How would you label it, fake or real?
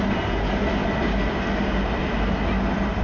real